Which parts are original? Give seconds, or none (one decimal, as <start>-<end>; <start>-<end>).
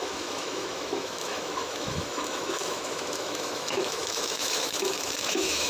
none